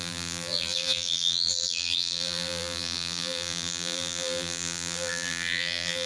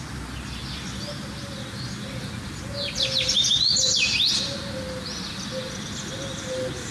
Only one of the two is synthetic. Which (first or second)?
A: first